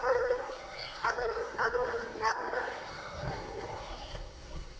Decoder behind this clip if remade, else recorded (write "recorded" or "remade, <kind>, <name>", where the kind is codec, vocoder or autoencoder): remade, codec, SNAC